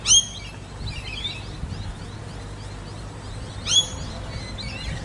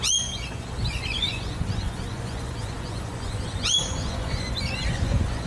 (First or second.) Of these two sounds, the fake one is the second